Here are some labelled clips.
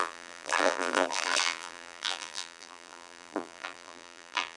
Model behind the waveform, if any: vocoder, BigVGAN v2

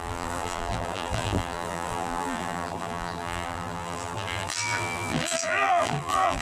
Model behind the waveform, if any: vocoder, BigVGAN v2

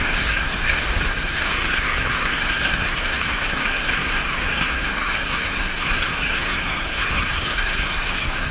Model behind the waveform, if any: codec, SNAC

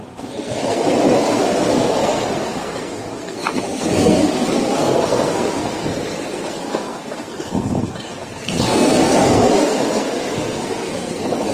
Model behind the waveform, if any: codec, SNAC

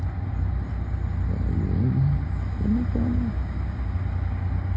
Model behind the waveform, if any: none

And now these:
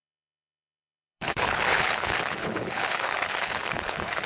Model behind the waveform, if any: codec, HILCodec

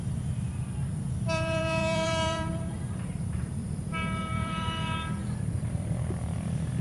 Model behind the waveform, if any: vocoder, BigVGAN v2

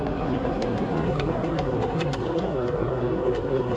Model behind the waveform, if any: codec, SNAC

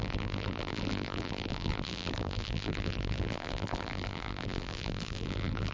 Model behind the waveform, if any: vocoder, BigVGAN v2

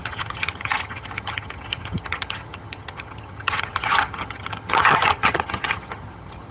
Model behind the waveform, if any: vocoder, HiFi-GAN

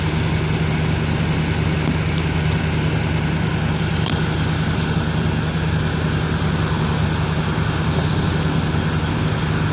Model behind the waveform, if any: none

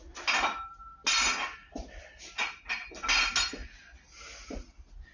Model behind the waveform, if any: none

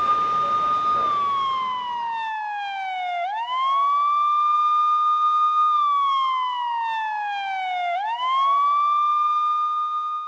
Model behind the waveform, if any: none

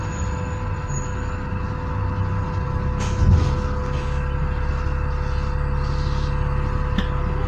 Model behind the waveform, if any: none